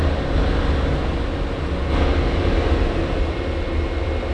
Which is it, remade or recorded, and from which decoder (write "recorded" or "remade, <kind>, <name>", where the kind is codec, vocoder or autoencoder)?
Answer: recorded